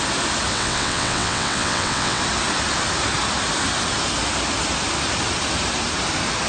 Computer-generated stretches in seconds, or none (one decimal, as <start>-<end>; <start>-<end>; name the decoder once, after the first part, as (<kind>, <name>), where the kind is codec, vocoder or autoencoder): 0.5-2.2 (vocoder, WaveNeXt)